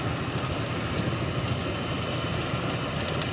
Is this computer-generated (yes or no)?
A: no